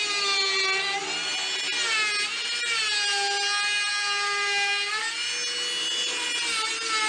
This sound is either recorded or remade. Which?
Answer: recorded